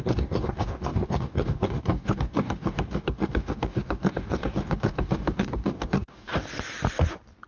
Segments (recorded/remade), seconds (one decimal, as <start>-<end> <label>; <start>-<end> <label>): 0.0-6.3 remade; 6.3-7.5 recorded

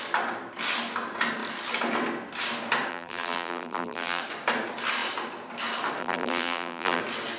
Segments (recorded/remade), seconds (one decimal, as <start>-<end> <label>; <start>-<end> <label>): 0.0-2.9 recorded; 2.9-4.2 remade; 4.2-6.0 recorded; 6.0-7.0 remade; 7.0-7.4 recorded

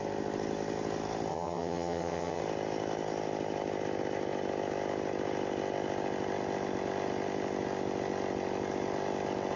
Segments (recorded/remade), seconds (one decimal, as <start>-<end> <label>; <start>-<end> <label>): 0.0-1.3 recorded; 1.3-2.4 remade; 2.4-9.6 recorded

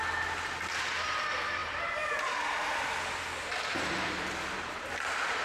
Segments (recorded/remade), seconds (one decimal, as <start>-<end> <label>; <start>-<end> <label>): 0.0-5.4 recorded

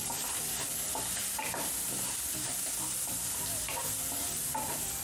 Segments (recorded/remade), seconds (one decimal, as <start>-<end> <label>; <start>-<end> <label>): 0.0-5.0 remade